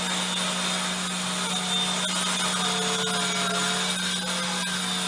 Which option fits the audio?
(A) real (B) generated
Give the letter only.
A